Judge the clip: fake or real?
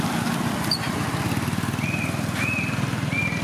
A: real